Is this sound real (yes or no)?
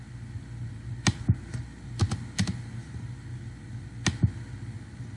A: yes